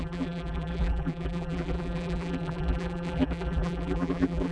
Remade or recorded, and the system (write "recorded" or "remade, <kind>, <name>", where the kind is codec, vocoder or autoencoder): remade, vocoder, BigVGAN v2